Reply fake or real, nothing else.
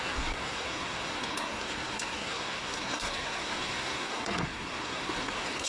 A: fake